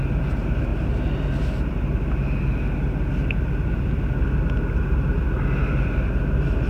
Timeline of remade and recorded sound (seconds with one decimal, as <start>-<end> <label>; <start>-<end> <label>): 0.0-6.7 recorded